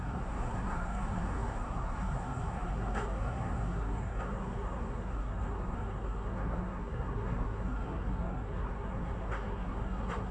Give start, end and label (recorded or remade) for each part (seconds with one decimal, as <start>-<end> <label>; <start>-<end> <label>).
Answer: 0.0-10.3 remade